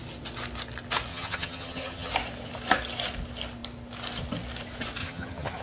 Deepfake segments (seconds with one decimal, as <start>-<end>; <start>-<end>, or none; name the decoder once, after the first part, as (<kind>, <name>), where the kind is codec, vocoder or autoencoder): 1.1-2.1 (vocoder, HiFi-GAN); 5.0-5.6